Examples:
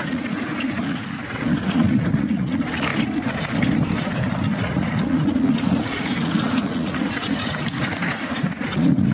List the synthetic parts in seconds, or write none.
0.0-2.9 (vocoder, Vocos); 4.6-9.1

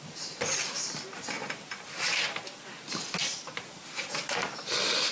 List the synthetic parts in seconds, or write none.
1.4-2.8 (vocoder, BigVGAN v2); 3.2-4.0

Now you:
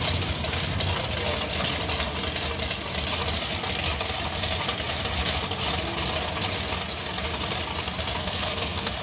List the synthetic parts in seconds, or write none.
8.2-9.0 (codec, SNAC)